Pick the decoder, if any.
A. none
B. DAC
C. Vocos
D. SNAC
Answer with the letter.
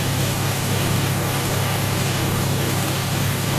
B